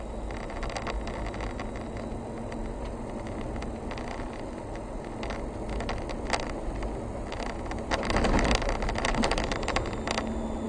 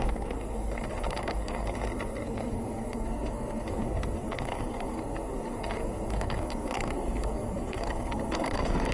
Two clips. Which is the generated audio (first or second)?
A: second